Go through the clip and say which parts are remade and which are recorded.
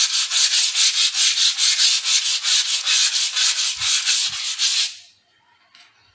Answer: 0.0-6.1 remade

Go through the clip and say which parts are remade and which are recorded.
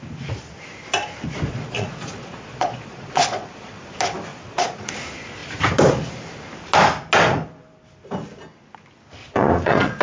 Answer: 0.0-1.5 recorded; 1.5-3.8 remade; 3.8-4.3 recorded; 4.3-4.9 remade; 4.9-9.2 recorded; 9.2-10.0 remade